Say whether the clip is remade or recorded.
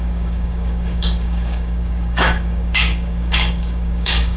remade